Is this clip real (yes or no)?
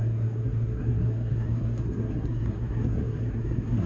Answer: no